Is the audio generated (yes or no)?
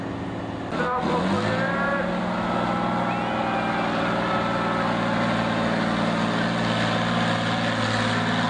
no